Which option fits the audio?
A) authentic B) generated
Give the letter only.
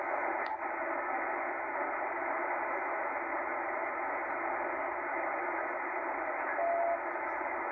A